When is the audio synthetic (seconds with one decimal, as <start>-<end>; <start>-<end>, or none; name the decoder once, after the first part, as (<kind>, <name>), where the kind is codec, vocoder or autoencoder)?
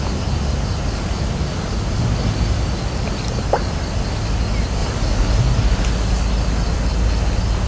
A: none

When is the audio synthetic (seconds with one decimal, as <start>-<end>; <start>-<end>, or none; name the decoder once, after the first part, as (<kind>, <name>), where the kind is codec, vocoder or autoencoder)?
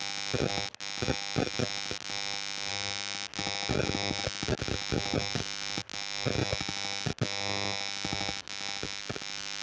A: none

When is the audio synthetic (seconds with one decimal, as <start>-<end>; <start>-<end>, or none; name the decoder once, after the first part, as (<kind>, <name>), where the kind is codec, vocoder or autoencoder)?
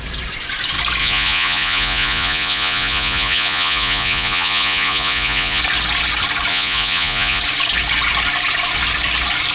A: 1.0-5.6 (vocoder, Vocos); 6.5-7.4